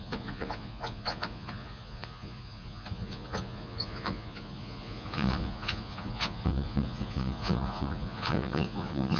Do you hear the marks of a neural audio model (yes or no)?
yes